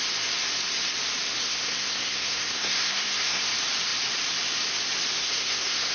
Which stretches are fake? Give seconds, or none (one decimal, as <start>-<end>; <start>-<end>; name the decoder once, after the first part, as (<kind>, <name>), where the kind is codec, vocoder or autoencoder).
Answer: 1.4-3.5 (codec, SNAC); 5.2-5.9

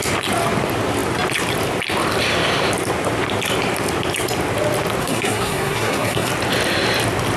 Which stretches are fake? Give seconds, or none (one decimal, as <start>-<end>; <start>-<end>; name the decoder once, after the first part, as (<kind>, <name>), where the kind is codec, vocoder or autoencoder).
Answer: 5.0-6.3 (codec, SNAC)

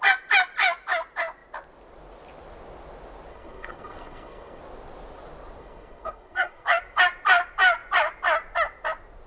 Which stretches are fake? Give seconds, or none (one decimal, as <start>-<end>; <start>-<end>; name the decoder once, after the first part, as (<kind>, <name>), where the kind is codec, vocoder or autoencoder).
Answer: 3.3-4.6 (codec, SNAC); 5.6-7.0

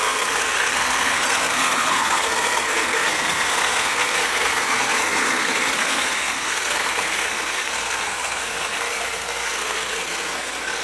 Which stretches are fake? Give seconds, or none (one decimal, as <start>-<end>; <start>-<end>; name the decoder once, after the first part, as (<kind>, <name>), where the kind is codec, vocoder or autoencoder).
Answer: 0.0-10.8 (codec, SNAC)

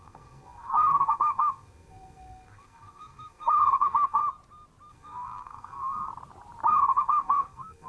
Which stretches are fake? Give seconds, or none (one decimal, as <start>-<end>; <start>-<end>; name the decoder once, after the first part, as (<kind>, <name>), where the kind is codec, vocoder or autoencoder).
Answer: 0.0-4.2 (codec, SNAC); 4.9-6.1; 6.7-7.9